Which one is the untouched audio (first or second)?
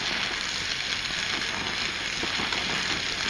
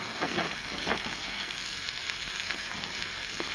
first